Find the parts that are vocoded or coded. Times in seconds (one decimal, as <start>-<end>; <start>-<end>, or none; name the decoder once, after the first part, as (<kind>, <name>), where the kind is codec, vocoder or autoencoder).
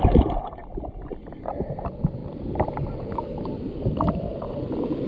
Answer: 0.0-5.1 (vocoder, BigVGAN v2)